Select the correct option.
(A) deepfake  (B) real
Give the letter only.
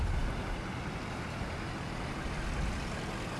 B